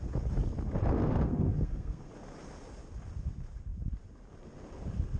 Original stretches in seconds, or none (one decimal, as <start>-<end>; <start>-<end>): 0.0-0.8; 2.1-5.2